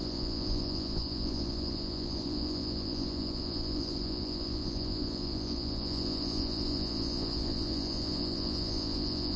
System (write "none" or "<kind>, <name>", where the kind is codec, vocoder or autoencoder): vocoder, Vocos